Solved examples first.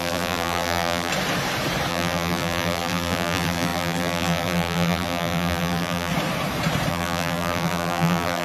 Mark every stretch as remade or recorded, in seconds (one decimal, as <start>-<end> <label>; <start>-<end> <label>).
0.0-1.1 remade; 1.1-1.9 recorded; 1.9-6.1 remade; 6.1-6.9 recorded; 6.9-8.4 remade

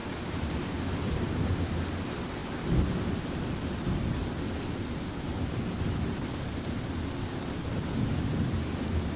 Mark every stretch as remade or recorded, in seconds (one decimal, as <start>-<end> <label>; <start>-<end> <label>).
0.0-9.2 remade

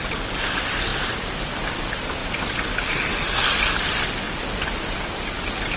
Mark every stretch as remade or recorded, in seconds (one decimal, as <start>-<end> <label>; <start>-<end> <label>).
0.0-5.8 recorded